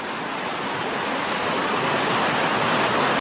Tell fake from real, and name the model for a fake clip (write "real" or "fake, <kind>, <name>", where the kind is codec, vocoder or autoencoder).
real